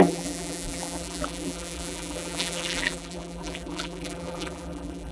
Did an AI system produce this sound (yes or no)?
yes